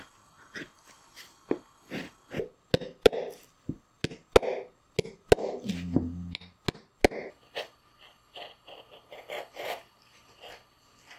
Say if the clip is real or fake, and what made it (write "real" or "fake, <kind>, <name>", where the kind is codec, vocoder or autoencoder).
real